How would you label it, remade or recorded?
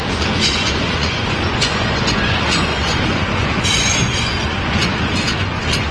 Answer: remade